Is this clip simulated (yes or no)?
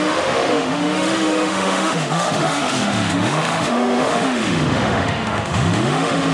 yes